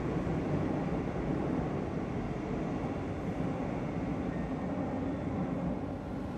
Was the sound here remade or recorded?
recorded